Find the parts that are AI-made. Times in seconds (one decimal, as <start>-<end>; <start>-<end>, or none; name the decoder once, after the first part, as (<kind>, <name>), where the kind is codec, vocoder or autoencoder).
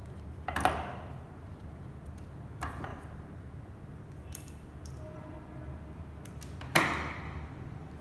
none